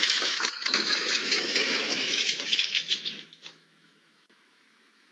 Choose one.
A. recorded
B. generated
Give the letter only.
B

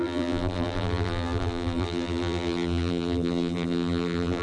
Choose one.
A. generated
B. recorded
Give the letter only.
A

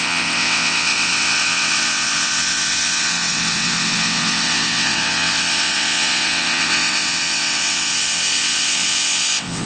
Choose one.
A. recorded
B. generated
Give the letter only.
B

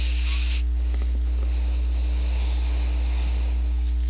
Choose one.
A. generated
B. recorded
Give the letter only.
B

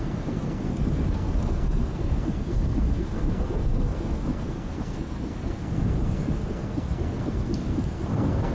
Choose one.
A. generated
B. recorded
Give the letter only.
A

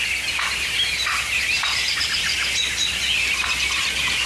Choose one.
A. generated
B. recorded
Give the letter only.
B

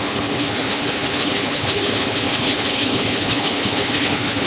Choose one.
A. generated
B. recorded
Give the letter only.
A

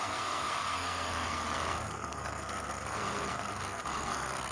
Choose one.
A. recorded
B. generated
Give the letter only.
B